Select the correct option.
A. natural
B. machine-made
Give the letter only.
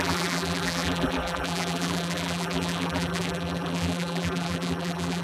B